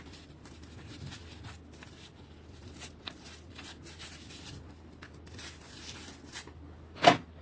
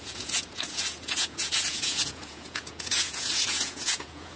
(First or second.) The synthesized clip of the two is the second